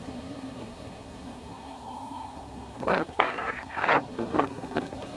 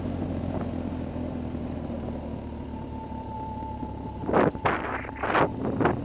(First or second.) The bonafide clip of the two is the second